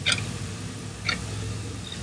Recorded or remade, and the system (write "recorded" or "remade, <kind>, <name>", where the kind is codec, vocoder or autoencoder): recorded